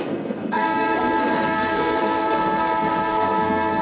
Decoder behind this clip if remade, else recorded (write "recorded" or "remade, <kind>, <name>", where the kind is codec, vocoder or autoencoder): remade, codec, SNAC